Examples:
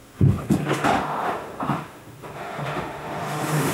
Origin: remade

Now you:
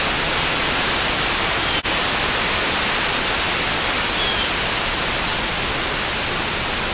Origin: recorded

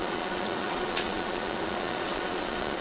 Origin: remade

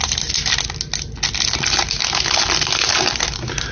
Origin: recorded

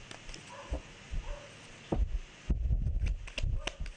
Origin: recorded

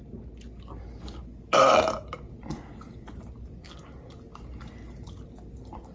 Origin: recorded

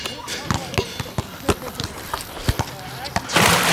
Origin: recorded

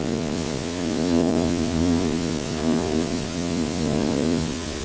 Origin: remade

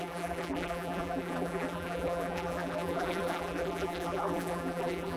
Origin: remade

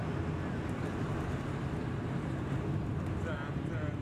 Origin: recorded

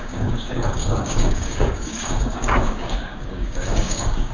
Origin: remade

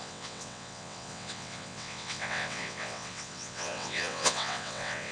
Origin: remade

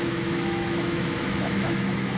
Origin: remade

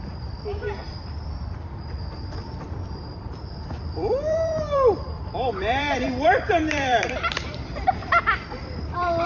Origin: remade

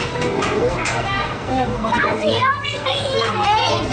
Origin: remade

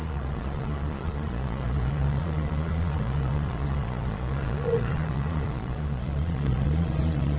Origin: remade